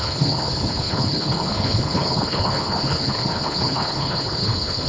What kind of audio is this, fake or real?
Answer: fake